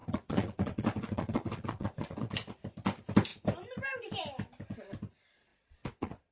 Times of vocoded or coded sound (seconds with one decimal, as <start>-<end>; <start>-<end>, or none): 0.0-2.3; 5.5-6.3